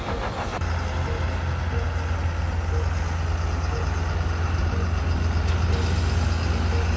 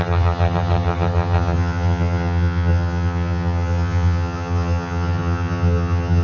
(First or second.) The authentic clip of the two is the first